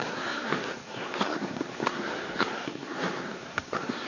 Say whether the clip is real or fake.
fake